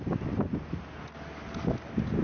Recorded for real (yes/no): yes